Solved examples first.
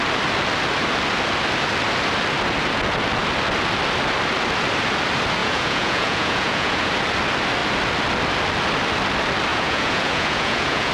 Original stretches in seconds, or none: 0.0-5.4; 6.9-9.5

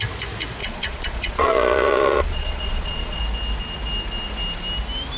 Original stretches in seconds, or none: 0.0-0.6; 3.2-5.2

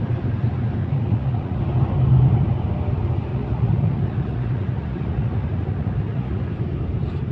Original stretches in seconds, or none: 0.0-0.8; 1.6-3.3; 6.4-7.3